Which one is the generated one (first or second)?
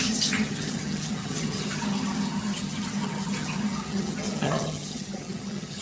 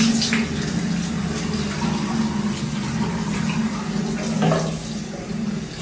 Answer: first